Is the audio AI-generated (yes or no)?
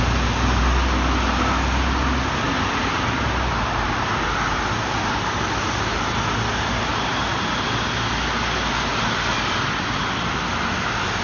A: no